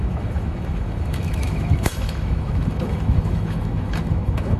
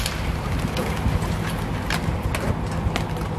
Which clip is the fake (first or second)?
first